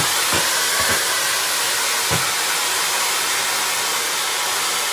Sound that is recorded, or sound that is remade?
recorded